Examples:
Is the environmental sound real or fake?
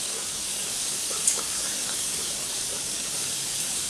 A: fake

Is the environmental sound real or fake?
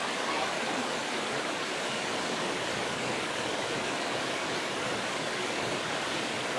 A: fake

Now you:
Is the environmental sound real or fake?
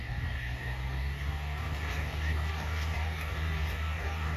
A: fake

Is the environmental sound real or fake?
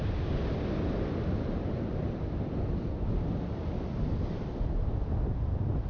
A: real